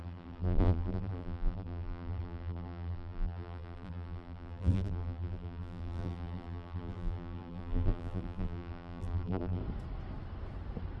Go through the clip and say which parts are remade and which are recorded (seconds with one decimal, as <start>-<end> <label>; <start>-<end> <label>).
0.0-9.6 remade; 9.6-11.0 recorded